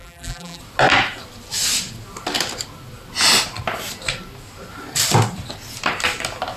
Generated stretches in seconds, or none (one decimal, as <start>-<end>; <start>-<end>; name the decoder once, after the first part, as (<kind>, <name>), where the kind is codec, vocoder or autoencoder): 0.0-0.6 (vocoder, BigVGAN v2)